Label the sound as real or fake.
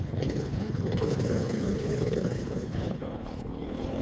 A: fake